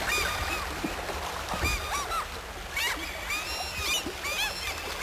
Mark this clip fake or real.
real